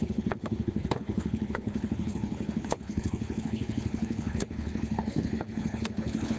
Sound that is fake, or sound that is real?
fake